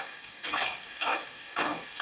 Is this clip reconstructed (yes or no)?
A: yes